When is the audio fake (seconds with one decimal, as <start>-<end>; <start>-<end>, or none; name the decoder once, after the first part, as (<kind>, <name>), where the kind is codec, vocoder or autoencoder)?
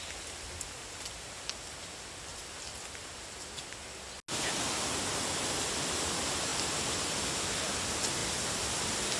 none